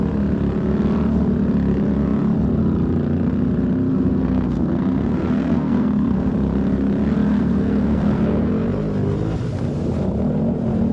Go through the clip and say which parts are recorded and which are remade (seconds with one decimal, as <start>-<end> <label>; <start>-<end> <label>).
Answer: 0.0-3.9 recorded; 3.9-6.3 remade; 6.3-7.3 recorded; 7.3-8.5 remade; 8.5-10.9 recorded